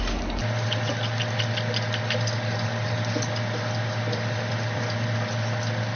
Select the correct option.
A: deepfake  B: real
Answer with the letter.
B